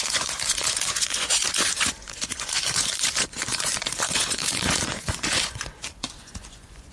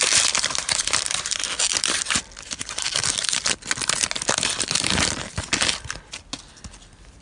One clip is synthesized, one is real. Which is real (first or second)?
second